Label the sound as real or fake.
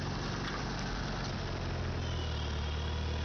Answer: real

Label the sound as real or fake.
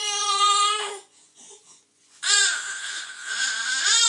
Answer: fake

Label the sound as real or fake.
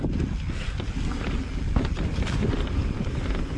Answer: real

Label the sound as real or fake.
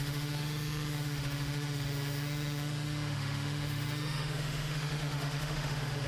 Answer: fake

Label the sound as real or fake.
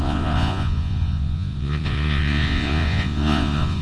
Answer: fake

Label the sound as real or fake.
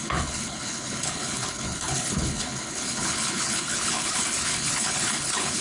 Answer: fake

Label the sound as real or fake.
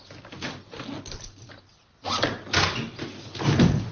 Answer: real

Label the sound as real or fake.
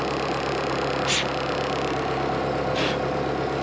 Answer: real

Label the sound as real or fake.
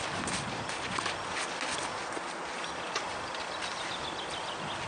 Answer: real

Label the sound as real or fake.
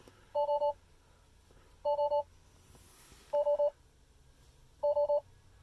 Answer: real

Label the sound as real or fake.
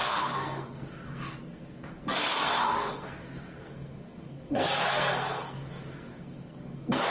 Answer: fake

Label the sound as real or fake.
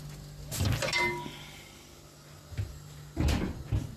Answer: real